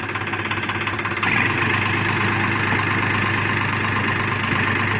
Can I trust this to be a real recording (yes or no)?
yes